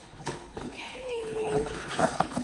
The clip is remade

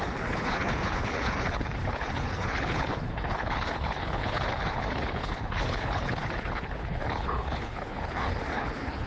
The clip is remade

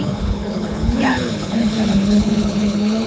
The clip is remade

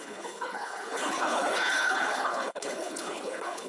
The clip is remade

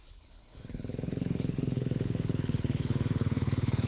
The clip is remade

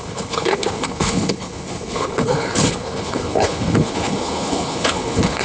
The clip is remade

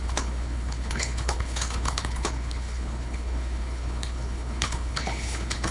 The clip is remade